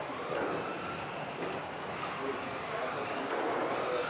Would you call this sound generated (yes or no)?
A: no